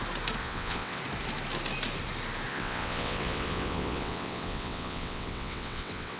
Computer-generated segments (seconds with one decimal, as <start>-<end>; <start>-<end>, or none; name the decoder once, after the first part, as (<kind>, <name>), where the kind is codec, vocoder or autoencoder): 0.4-1.0 (vocoder, WaveNeXt); 2.5-6.2